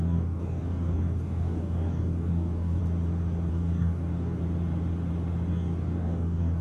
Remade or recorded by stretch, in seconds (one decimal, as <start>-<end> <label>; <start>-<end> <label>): 0.0-2.8 remade; 2.8-3.5 recorded; 3.5-4.4 remade; 4.4-5.5 recorded; 5.5-6.6 remade